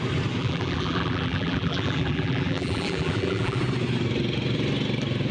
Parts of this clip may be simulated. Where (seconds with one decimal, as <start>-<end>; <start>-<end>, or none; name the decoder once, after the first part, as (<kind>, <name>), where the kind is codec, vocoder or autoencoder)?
0.4-3.6 (vocoder, BigVGAN v2)